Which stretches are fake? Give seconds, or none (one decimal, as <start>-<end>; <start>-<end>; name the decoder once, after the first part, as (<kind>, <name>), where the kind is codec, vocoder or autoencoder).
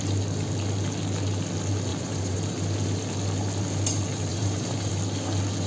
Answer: 1.9-2.5 (vocoder, BigVGAN v2); 4.3-4.9